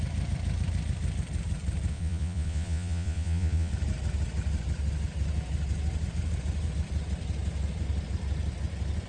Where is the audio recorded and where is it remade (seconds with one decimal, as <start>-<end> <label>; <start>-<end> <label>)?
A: 0.0-1.9 recorded; 1.9-3.7 remade; 3.7-9.1 recorded